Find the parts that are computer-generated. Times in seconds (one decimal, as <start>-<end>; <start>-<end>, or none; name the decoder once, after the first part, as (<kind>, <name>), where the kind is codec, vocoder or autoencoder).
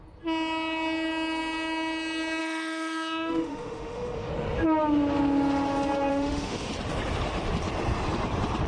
2.4-4.3 (autoencoder, DAC-VAE); 6.1-6.7